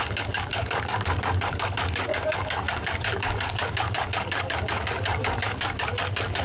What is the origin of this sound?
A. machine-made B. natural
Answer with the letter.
A